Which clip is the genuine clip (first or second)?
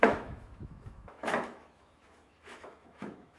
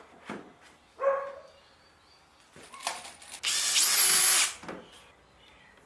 second